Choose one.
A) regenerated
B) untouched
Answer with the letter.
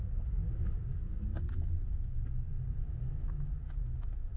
B